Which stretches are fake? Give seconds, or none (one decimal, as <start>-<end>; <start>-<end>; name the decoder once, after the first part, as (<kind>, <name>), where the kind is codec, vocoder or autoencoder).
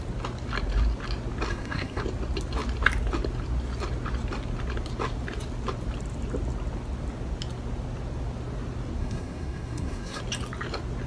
1.5-2.0 (codec, SNAC); 9.0-10.2